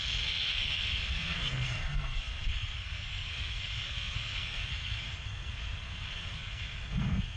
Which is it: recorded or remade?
remade